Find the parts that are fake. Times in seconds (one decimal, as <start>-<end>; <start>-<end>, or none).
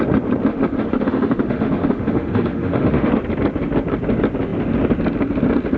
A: 0.5-3.1